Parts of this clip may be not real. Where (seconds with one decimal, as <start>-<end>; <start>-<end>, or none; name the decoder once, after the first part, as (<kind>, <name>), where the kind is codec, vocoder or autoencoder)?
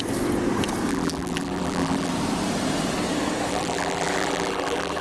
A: 0.9-2.1 (vocoder, BigVGAN v2); 3.5-5.0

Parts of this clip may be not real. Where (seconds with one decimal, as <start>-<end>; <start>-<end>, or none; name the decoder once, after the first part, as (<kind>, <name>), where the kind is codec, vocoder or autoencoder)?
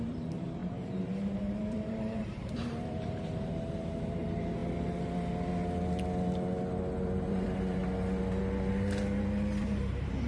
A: 0.0-4.6 (vocoder, BigVGAN v2); 7.3-7.8; 9.6-10.3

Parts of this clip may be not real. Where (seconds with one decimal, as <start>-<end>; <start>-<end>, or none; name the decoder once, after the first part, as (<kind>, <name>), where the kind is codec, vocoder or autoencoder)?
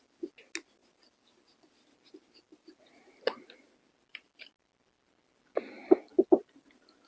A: none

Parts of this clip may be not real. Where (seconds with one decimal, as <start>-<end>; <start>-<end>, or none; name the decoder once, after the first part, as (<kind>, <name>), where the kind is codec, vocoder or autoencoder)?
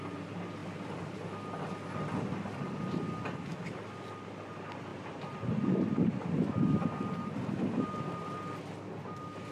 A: 0.6-1.7 (vocoder, BigVGAN v2)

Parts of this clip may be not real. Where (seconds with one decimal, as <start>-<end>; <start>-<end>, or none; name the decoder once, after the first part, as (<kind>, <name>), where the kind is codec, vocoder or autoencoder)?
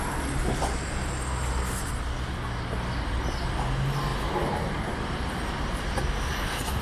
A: 4.1-6.0 (vocoder, BigVGAN v2)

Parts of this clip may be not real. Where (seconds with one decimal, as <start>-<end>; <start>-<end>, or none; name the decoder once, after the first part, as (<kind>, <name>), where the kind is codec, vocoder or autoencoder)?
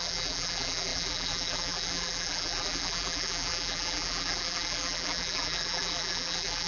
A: 0.0-6.7 (vocoder, BigVGAN v2)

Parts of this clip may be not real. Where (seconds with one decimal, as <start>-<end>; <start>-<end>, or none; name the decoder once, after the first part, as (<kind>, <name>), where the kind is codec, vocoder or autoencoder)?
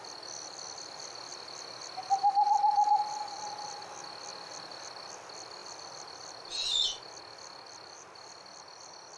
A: 1.3-2.9 (vocoder, BigVGAN v2); 4.3-5.1; 5.6-7.1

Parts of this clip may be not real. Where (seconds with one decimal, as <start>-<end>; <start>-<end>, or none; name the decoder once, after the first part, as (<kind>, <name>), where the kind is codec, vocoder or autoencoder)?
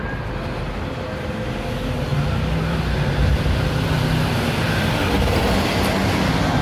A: 2.1-5.0 (vocoder, BigVGAN v2)